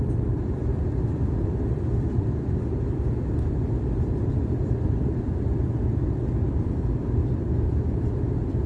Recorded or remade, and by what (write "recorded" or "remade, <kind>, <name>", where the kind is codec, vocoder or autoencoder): remade, vocoder, BigVGAN v2